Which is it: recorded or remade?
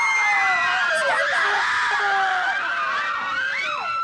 recorded